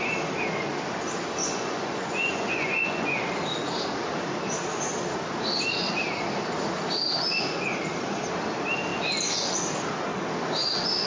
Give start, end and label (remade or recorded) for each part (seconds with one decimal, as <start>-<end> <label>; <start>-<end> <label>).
0.0-1.4 recorded; 1.4-3.2 remade; 3.2-11.1 recorded